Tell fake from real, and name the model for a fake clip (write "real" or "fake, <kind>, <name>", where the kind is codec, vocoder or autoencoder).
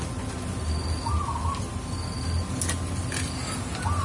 real